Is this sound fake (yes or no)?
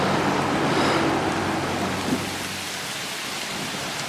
no